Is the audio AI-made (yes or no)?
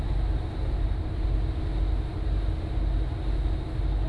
no